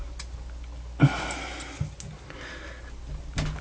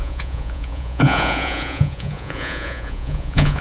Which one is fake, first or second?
second